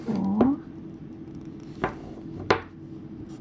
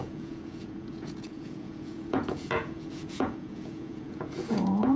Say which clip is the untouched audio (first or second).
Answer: first